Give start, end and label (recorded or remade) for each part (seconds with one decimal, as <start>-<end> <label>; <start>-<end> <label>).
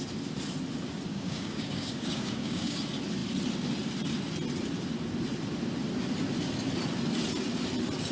0.0-1.1 recorded; 1.1-2.8 remade; 2.8-8.1 recorded